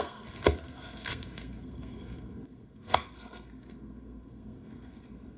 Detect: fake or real fake